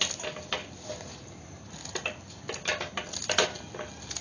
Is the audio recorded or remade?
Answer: recorded